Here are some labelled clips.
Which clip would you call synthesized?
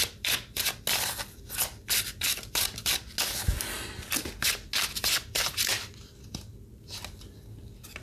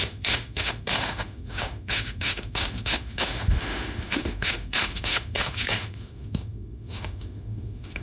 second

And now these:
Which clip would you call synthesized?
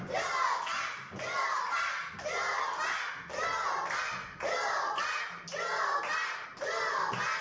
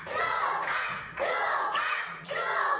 second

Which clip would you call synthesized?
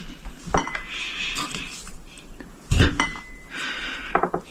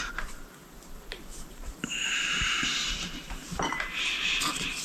second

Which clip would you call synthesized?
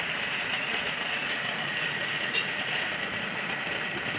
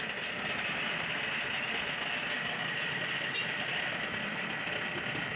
first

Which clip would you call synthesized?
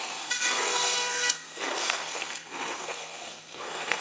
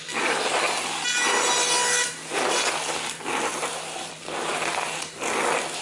first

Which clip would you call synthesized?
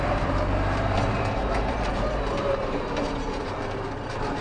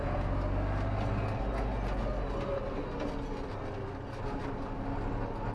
first